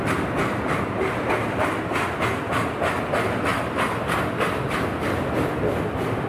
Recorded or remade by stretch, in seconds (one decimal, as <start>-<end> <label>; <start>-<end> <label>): 0.0-6.3 recorded